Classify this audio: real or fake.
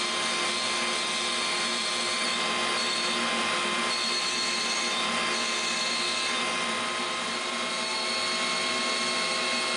real